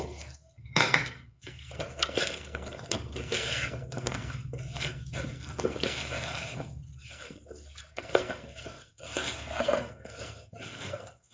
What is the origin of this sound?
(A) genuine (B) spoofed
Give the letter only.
B